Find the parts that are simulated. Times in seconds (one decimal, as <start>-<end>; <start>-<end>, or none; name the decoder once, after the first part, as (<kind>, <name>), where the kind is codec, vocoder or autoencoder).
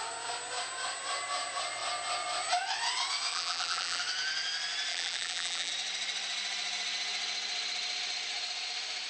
3.3-4.0 (vocoder, BigVGAN v2); 4.9-5.7